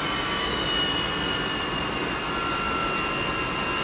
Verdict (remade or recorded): recorded